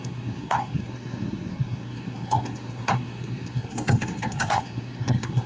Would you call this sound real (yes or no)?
no